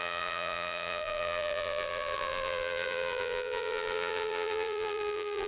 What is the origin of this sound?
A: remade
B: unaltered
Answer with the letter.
A